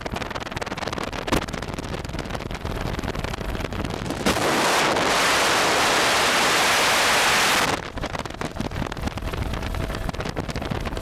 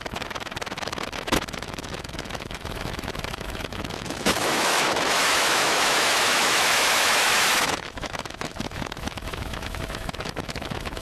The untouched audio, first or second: first